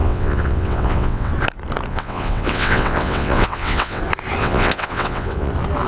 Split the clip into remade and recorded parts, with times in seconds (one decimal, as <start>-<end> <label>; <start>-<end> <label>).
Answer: 0.0-1.3 remade; 1.3-1.9 recorded; 1.9-4.0 remade; 4.0-4.4 recorded; 4.4-5.5 remade; 5.5-5.9 recorded